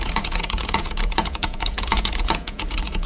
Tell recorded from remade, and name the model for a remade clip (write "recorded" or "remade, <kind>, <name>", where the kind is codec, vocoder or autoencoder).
remade, vocoder, Vocos